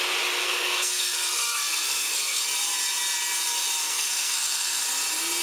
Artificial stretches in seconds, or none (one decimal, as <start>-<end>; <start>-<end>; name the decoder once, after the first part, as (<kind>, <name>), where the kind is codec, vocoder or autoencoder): 0.4-2.4 (codec, SNAC); 3.8-4.8